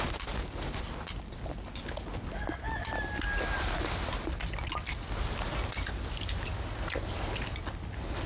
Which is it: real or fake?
real